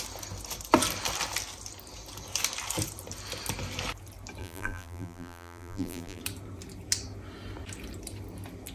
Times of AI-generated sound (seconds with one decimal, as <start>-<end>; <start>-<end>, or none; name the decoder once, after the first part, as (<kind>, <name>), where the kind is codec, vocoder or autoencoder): 4.4-6.2 (vocoder, BigVGAN v2)